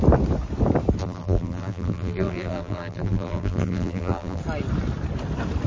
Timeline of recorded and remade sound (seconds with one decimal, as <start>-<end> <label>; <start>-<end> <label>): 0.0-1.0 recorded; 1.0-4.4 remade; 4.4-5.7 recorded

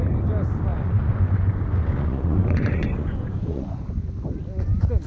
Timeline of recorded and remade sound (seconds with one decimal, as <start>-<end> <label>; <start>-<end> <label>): 0.0-0.7 recorded; 0.7-3.8 remade; 3.8-5.1 recorded

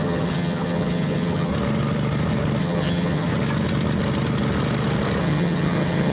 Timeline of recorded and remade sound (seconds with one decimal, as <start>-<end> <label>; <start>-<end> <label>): 0.0-1.5 remade; 1.5-2.6 recorded; 2.6-3.3 remade; 3.3-5.2 recorded; 5.2-6.1 remade